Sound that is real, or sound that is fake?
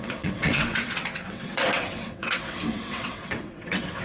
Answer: fake